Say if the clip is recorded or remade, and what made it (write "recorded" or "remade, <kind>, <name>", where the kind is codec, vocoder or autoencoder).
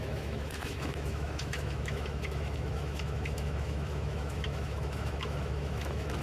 remade, autoencoder, DAC-VAE